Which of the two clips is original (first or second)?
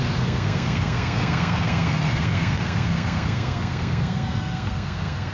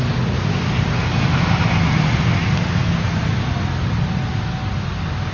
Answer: second